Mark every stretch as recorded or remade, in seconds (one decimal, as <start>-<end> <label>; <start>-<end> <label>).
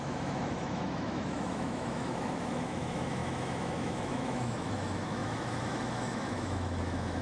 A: 0.0-7.2 remade